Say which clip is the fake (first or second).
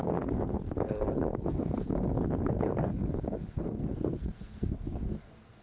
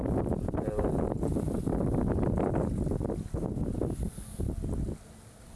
first